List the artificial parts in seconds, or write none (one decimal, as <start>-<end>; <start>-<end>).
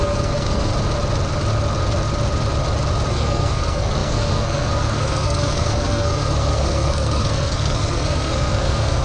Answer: 0.0-0.7; 3.1-9.0